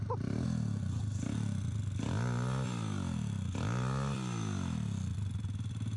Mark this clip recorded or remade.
recorded